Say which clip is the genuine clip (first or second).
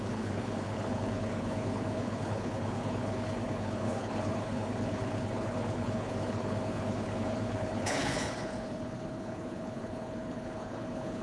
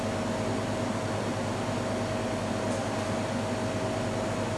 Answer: second